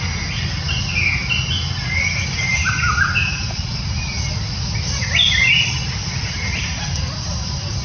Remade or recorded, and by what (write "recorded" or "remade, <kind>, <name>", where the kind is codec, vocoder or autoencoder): recorded